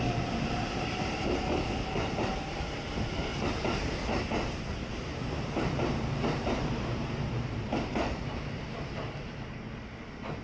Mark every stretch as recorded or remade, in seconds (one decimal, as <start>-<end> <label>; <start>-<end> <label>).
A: 0.0-4.9 recorded; 4.9-8.9 remade; 8.9-10.4 recorded